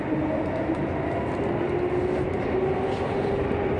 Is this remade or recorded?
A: recorded